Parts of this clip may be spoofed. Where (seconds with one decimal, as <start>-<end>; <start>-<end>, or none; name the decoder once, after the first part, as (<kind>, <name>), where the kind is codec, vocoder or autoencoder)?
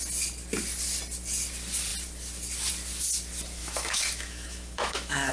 3.6-5.3 (autoencoder, DAC-VAE)